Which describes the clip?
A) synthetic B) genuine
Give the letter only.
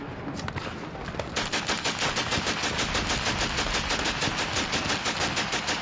B